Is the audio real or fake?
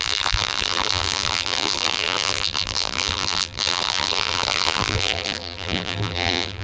fake